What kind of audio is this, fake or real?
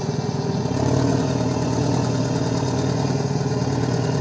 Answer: fake